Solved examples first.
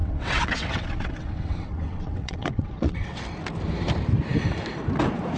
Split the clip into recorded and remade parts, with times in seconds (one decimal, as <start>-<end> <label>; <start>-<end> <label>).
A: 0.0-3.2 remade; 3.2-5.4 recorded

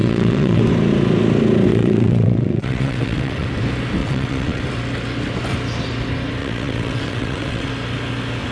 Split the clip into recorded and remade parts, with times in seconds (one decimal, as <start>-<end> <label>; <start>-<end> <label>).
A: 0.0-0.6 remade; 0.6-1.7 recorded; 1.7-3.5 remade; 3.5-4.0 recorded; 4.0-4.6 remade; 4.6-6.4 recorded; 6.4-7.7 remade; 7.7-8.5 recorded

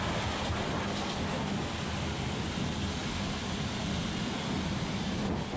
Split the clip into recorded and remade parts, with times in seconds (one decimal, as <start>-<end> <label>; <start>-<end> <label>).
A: 0.0-5.6 recorded